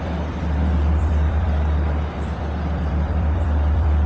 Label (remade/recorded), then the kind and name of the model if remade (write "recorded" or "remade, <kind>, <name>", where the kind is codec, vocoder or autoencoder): remade, vocoder, BigVGAN v2